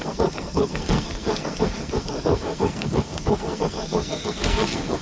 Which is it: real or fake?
fake